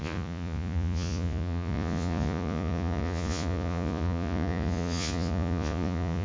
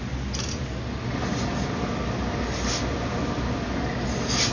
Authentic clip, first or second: second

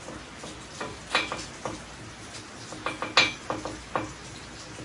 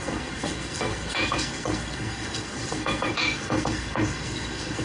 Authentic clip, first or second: first